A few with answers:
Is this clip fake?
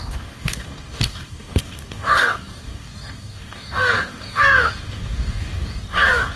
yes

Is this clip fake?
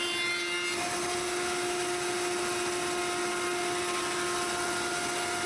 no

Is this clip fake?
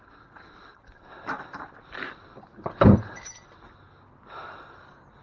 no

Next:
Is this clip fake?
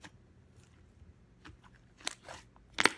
no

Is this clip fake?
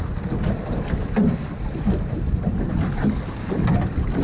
no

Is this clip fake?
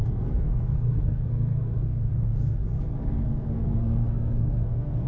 yes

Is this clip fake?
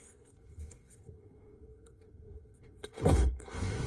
yes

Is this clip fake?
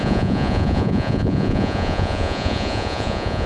yes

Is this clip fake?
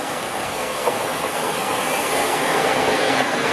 yes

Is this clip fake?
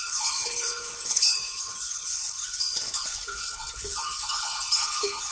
yes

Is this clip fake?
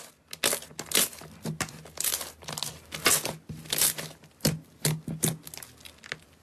no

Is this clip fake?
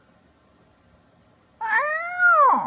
no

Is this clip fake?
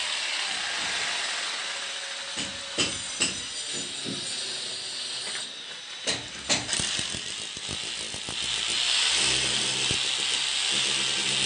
no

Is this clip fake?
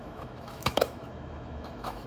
yes